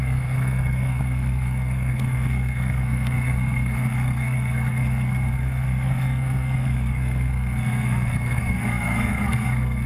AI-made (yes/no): yes